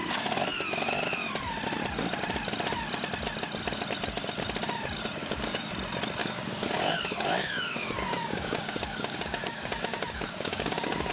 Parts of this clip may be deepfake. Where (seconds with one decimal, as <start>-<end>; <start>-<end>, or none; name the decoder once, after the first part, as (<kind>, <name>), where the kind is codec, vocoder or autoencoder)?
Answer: 5.2-5.7 (codec, DAC); 6.2-11.1